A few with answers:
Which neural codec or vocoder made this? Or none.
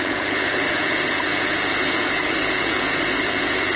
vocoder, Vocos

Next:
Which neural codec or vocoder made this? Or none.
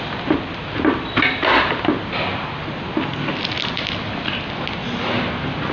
none